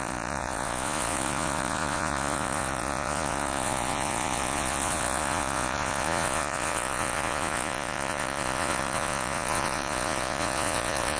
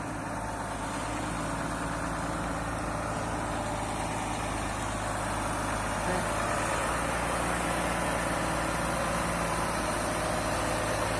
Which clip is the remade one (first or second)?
first